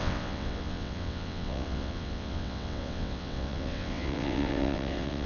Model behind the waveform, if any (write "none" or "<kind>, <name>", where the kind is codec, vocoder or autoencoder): vocoder, WaveNeXt